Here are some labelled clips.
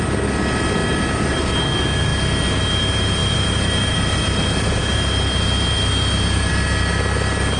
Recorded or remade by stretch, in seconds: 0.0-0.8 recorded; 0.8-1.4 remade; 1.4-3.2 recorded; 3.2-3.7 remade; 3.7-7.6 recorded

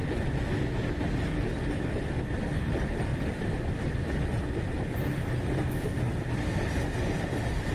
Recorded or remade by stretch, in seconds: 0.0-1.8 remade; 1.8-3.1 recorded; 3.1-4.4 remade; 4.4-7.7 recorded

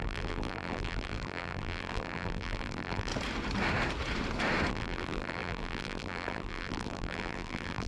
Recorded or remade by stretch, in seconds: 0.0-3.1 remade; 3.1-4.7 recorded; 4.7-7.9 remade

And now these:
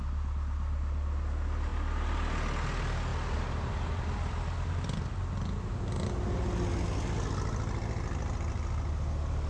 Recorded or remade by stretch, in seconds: 0.0-1.7 recorded; 1.7-2.3 remade; 2.3-3.1 recorded; 3.1-5.2 remade; 5.2-9.5 recorded